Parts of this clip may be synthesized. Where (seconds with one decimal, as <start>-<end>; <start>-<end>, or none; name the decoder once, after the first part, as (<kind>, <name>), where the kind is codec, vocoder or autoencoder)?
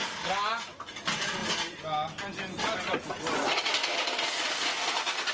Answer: 0.5-1.4 (vocoder, BigVGAN v2); 2.9-5.3